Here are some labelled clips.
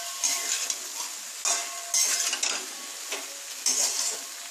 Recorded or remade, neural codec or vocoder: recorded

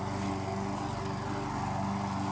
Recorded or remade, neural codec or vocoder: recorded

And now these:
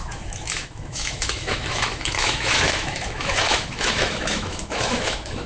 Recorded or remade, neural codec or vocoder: remade, autoencoder, DAC-VAE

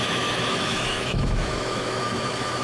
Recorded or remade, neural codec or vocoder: remade, autoencoder, DAC-VAE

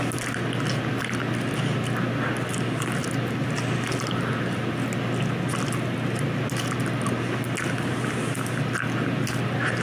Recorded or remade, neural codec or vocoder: recorded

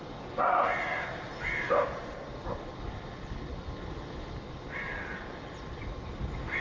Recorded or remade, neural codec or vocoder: recorded